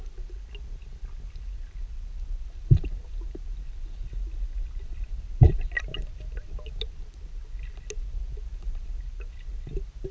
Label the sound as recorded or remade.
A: recorded